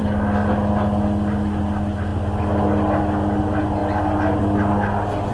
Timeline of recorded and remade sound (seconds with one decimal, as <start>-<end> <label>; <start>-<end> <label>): 0.0-5.3 recorded